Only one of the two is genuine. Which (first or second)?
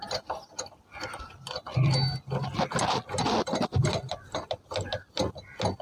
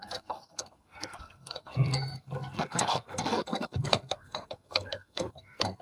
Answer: first